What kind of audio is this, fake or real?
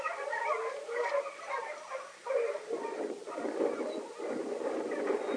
real